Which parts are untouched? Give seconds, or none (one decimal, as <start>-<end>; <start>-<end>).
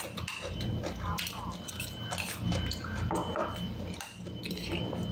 0.0-5.1